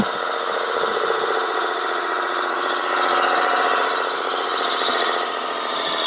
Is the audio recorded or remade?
remade